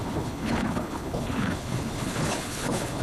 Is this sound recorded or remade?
remade